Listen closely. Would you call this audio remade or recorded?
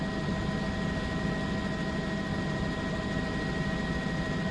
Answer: recorded